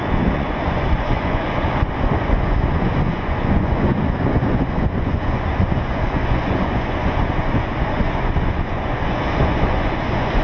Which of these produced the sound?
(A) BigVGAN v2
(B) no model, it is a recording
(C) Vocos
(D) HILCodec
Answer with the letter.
C